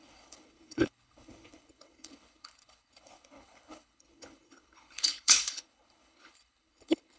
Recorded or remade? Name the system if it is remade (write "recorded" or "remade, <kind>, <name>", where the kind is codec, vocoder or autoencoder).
remade, codec, HILCodec